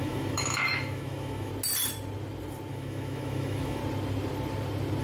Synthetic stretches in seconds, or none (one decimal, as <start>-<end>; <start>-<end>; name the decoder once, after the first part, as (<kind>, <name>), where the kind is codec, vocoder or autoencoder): 0.0-1.5 (autoencoder, DAC-VAE); 2.7-3.8